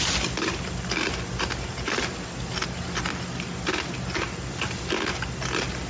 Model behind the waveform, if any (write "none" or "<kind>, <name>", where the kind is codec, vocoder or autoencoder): none